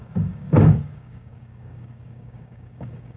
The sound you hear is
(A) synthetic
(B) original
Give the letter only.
A